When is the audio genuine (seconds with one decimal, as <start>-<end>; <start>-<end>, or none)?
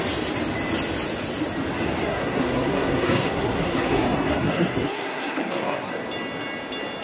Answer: 0.0-2.0; 5.9-7.0